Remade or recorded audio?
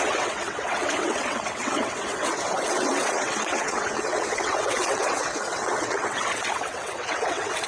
remade